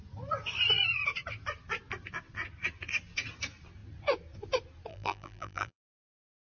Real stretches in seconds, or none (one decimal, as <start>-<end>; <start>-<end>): 0.0-4.9